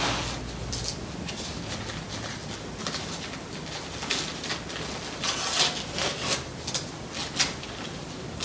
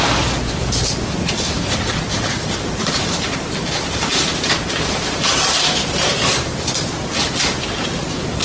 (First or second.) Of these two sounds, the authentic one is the first